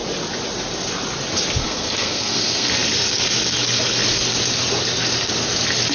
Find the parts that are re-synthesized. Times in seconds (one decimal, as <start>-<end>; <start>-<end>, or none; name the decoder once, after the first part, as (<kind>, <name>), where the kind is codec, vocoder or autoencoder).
1.6-2.7 (codec, SNAC)